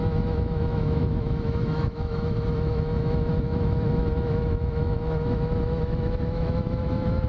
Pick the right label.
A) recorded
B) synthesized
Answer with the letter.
B